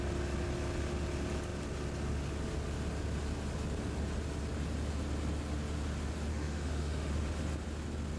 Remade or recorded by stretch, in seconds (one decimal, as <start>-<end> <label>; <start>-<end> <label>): 0.0-6.3 recorded; 6.3-7.1 remade; 7.1-8.2 recorded